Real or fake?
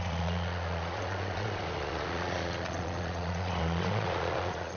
fake